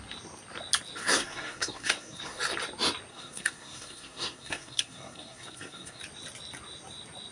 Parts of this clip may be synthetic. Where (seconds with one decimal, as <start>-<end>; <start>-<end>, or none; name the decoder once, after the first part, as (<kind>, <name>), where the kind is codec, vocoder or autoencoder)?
1.0-2.4 (codec, SNAC); 3.1-6.0